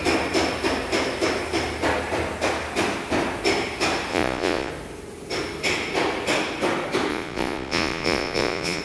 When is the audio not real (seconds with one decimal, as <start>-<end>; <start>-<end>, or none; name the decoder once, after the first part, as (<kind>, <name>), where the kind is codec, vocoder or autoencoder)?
4.1-4.7 (vocoder, Vocos); 7.1-8.8